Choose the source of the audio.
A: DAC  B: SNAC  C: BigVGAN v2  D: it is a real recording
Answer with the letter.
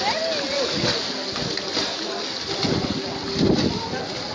D